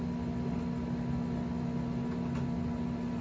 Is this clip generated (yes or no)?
no